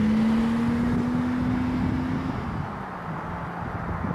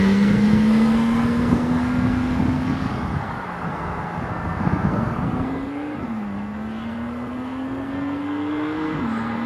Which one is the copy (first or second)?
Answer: second